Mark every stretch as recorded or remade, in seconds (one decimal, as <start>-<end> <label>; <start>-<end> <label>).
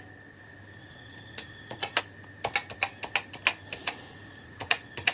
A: 0.0-0.8 recorded; 0.8-2.0 remade; 2.0-3.8 recorded; 3.8-5.1 remade